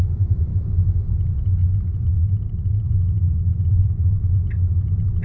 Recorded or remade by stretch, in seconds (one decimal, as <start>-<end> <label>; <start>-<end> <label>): 0.0-0.5 remade; 0.5-1.2 recorded; 1.2-5.2 remade